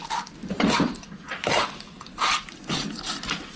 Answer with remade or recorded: recorded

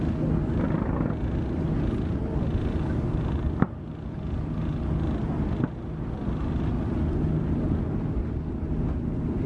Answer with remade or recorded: recorded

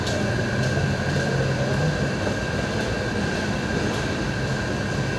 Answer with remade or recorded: recorded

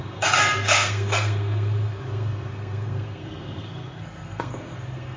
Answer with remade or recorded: remade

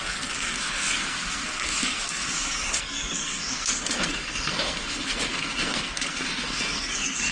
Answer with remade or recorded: remade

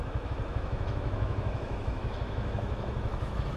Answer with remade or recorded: remade